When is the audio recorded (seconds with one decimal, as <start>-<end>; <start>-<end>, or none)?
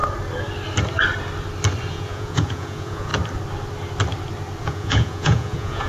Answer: 0.0-1.9; 3.1-4.6